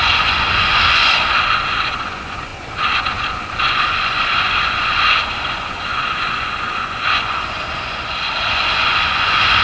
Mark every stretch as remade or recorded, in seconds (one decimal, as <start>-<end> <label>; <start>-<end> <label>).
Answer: 0.0-9.6 remade